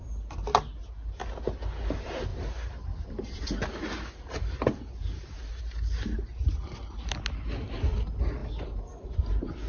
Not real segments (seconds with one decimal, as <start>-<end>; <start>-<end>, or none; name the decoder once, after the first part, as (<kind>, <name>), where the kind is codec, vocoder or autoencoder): 2.3-5.6 (vocoder, BigVGAN v2); 8.4-8.9